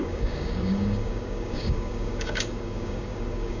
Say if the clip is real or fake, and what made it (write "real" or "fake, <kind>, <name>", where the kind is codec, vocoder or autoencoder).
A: fake, codec, DAC